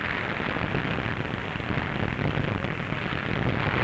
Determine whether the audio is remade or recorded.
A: recorded